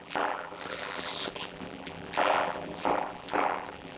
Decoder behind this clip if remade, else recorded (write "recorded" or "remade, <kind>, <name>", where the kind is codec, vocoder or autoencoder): remade, vocoder, BigVGAN v2